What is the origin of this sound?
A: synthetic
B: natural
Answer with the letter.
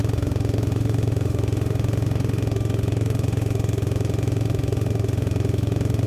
A